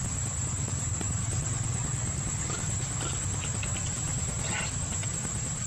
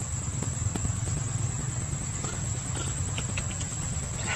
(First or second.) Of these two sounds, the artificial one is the first